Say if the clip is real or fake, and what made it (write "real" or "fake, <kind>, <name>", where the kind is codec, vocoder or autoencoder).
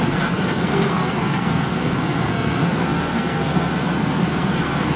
fake, codec, SNAC